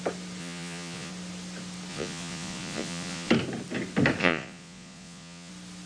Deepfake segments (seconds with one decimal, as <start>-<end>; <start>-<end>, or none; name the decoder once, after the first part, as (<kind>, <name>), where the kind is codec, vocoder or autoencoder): 0.4-1.1 (vocoder, Vocos); 1.9-3.3; 4.2-5.5